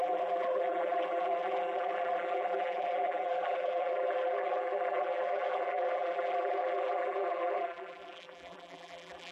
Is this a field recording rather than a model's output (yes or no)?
no